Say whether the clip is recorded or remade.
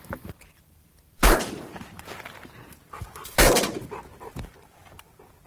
remade